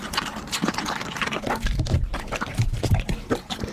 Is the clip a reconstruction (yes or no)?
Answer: no